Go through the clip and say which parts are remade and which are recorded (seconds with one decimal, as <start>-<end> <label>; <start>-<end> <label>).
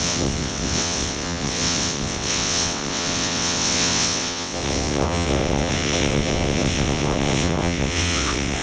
0.0-8.6 remade